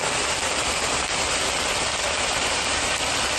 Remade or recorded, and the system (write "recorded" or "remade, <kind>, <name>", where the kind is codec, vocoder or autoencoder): recorded